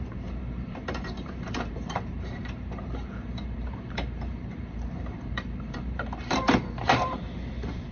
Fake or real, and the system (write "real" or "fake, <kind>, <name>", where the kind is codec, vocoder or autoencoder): fake, vocoder, BigVGAN v2